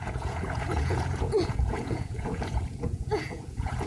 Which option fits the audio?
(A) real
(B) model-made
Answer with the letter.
B